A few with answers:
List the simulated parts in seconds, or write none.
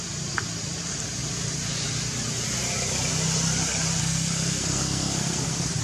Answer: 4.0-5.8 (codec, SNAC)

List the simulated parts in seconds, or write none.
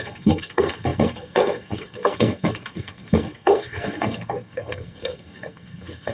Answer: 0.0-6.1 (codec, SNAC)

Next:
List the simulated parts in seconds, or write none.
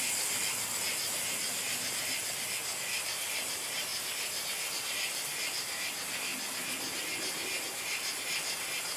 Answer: none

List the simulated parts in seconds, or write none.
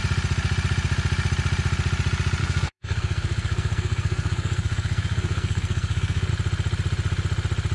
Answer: 2.4-6.3 (codec, SNAC)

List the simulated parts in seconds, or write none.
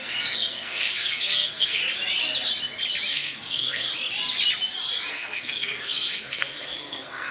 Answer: 0.0-1.8 (codec, SNAC); 3.1-3.9; 5.1-7.3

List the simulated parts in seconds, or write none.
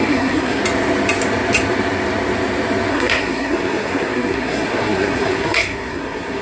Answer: 0.0-0.6 (codec, SNAC); 2.9-6.4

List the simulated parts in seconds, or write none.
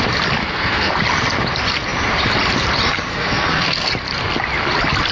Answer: 0.4-0.9 (codec, SNAC); 3.1-3.9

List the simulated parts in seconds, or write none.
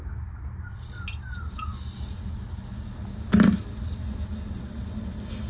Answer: none